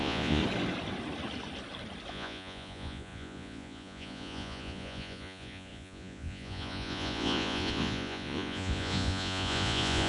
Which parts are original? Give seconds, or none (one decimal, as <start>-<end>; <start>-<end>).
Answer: 0.4-2.1